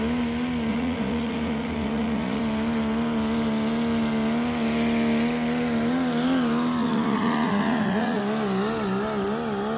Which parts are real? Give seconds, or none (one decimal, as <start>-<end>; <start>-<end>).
0.0-0.7; 2.4-6.8; 8.2-9.8